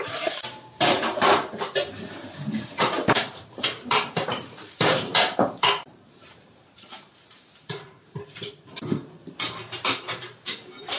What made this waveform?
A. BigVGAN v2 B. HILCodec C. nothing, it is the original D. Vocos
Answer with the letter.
A